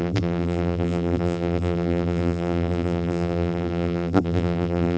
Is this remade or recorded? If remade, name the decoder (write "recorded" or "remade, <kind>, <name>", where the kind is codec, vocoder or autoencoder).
remade, vocoder, BigVGAN v2